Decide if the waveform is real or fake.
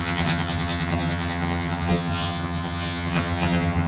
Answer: fake